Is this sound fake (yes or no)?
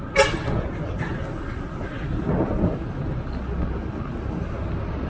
no